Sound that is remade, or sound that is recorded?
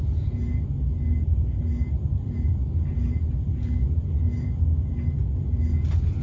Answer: recorded